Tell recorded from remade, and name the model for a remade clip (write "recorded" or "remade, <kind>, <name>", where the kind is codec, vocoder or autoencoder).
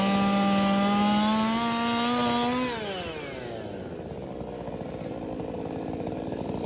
recorded